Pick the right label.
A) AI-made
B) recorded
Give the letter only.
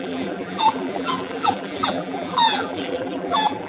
A